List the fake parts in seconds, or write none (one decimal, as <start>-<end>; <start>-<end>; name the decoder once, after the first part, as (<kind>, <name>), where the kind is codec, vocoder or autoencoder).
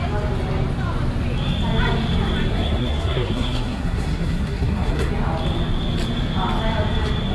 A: 2.5-5.1 (codec, SNAC)